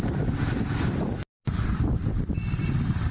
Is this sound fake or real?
real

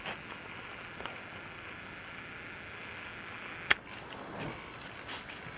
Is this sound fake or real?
real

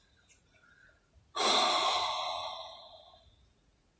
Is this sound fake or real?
fake